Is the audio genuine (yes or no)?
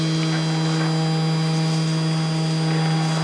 yes